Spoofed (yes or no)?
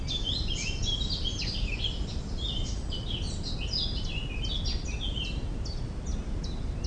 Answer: no